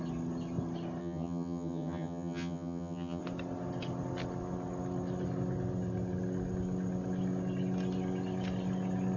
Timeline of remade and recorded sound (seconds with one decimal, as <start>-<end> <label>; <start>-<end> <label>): 0.0-1.0 recorded; 1.0-3.2 remade; 3.2-9.2 recorded